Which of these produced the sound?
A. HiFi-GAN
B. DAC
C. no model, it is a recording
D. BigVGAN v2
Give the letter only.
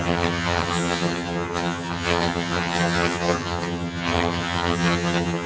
A